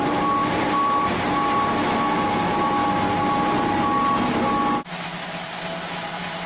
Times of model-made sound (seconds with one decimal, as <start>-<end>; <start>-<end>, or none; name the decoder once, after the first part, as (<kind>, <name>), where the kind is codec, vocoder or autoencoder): 0.4-1.1 (vocoder, BigVGAN v2)